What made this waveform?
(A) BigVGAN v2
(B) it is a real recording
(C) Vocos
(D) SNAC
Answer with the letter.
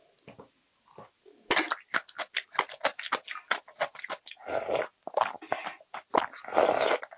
B